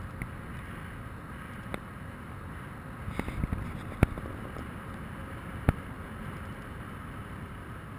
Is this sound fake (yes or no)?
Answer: no